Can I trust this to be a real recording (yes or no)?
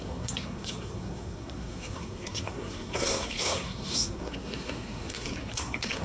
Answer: no